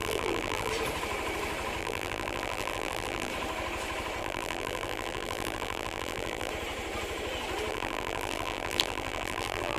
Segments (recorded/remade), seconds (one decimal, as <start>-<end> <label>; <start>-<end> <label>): 0.0-0.7 remade; 0.7-1.8 recorded; 1.8-3.3 remade; 3.3-4.2 recorded; 4.2-6.5 remade; 6.5-7.7 recorded; 7.7-9.8 remade